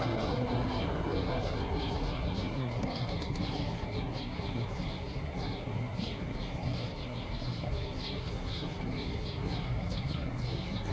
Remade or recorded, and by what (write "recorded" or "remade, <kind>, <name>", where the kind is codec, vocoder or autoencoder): remade, codec, SNAC